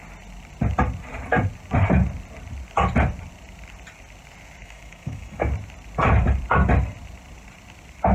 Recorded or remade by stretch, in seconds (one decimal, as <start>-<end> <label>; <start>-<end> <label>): 0.0-4.6 recorded; 4.6-5.5 remade; 5.5-8.1 recorded